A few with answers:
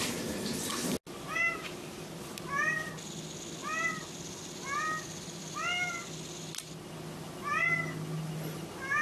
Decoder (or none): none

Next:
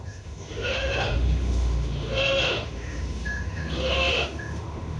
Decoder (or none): autoencoder, DAC-VAE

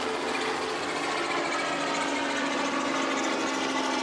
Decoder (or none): none